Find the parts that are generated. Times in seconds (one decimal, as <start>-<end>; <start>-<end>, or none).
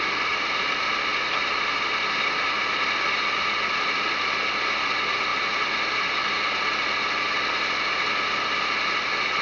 none